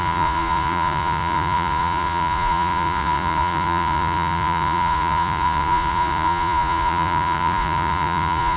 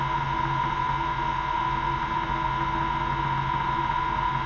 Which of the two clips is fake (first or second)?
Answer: first